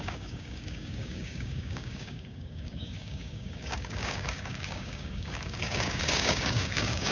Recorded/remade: remade